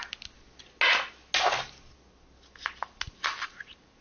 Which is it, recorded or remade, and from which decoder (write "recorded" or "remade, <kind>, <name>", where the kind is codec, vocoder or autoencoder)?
recorded